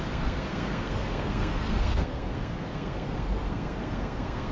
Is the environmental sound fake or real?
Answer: fake